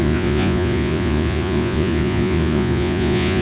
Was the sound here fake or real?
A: fake